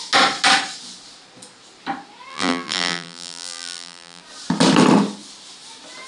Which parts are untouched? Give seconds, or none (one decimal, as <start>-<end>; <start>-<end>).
0.0-2.3; 4.2-6.1